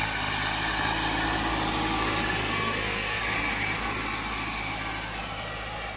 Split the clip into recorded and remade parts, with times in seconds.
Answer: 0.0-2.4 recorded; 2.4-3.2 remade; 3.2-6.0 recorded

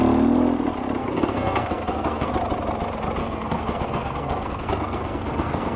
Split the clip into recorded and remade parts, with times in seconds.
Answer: 0.0-1.0 recorded; 1.0-2.3 remade; 2.3-3.2 recorded; 3.2-5.8 remade

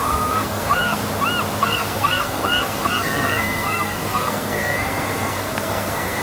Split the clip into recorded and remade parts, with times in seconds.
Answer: 0.0-1.0 remade; 1.0-1.6 recorded; 1.6-6.2 remade

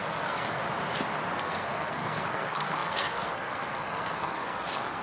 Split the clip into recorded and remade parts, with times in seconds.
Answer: 0.0-0.6 remade; 0.6-1.4 recorded; 1.4-5.0 remade

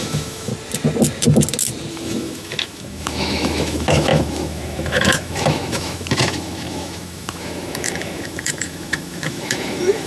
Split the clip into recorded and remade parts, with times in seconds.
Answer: 0.0-0.5 remade; 0.5-1.9 recorded; 1.9-10.1 remade

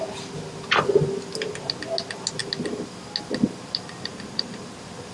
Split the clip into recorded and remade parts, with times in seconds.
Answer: 0.0-4.1 recorded; 4.1-4.6 remade; 4.6-5.1 recorded